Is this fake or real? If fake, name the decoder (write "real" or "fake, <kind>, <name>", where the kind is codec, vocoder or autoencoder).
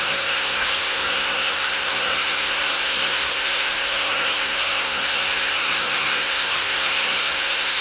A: fake, codec, SNAC